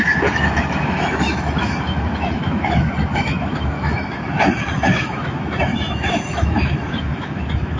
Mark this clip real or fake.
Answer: fake